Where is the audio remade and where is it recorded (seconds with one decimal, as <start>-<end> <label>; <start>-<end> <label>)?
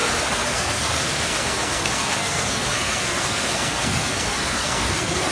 0.0-5.3 remade